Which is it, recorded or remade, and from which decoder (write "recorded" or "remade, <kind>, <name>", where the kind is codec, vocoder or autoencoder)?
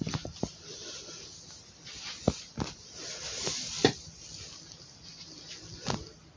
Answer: recorded